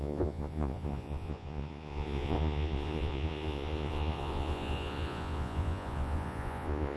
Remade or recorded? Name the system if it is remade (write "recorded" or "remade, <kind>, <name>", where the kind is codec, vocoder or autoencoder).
remade, vocoder, Vocos